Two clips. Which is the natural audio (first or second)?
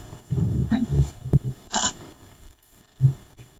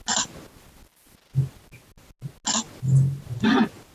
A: second